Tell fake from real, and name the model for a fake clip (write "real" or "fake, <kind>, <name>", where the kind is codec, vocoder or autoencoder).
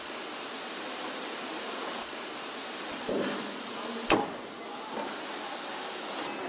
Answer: real